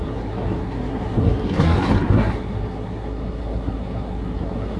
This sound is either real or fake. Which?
fake